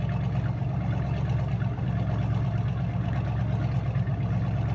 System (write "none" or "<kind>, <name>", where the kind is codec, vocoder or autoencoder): none